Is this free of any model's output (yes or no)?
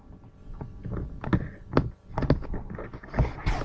yes